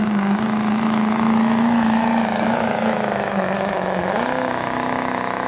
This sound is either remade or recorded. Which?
remade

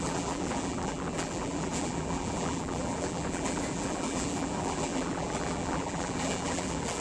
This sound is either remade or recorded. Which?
remade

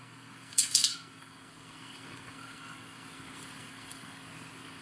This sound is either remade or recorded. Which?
remade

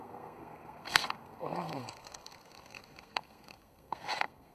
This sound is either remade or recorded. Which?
remade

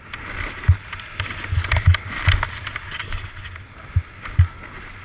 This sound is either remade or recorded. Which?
recorded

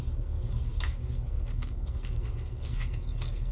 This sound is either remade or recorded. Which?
remade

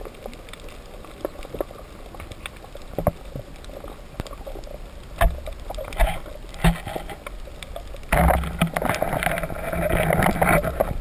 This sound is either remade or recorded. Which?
recorded